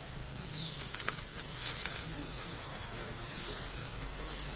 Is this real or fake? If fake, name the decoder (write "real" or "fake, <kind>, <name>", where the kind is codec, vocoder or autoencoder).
fake, codec, SNAC